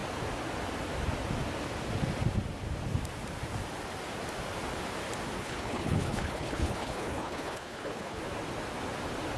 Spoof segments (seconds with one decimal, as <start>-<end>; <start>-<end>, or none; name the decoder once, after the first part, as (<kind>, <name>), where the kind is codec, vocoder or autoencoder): 5.4-8.2 (codec, HILCodec)